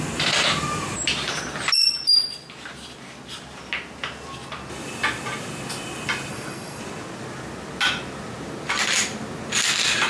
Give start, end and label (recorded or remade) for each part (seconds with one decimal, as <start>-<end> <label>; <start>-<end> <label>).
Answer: 0.0-6.3 recorded; 6.3-6.8 remade; 6.8-10.1 recorded